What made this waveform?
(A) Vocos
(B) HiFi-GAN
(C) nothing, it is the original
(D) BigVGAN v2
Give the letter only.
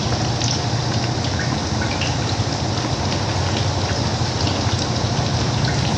C